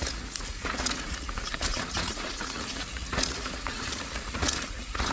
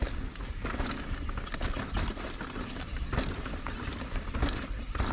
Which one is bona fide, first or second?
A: second